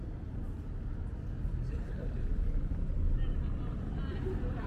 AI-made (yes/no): no